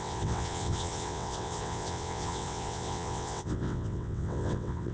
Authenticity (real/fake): fake